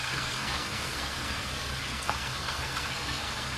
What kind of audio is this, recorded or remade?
remade